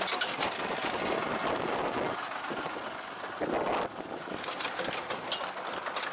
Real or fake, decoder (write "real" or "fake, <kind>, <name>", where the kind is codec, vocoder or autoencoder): real